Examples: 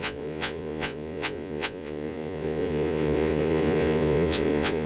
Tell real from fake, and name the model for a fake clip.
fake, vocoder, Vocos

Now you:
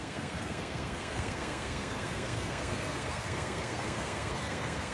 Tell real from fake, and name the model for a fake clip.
fake, codec, SNAC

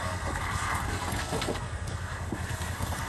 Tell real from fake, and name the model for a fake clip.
fake, codec, SNAC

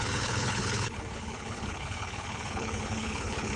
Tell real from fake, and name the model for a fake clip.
fake, codec, HILCodec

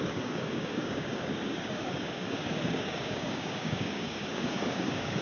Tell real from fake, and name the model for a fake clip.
fake, codec, DAC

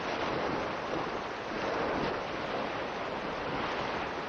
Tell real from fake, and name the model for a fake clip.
real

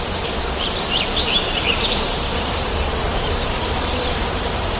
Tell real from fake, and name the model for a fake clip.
fake, vocoder, BigVGAN v2